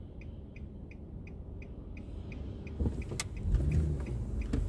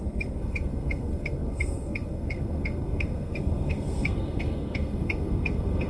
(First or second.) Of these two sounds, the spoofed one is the second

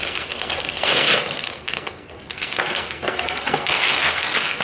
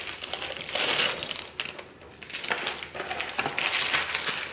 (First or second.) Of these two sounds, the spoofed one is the first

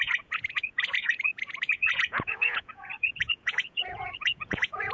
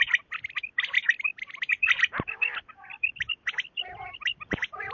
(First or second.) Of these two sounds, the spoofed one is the first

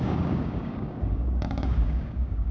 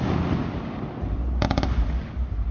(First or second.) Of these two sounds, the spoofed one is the first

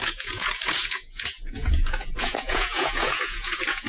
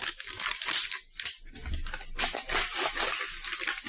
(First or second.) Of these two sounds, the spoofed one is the first